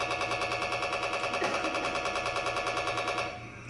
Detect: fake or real real